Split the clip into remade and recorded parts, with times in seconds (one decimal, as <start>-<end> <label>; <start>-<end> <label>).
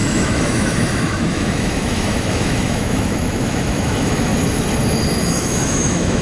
0.0-4.3 remade; 4.3-5.2 recorded; 5.2-6.2 remade